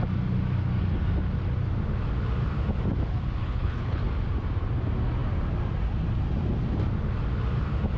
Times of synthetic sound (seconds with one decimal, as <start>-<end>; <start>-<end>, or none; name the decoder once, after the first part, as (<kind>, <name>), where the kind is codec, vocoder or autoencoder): 3.4-4.0 (codec, HILCodec)